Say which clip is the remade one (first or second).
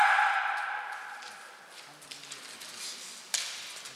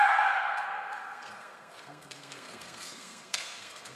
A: second